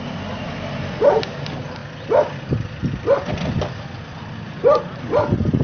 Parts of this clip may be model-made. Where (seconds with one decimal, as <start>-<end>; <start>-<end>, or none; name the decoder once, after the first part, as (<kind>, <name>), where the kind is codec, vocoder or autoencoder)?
0.4-1.1 (vocoder, BigVGAN v2)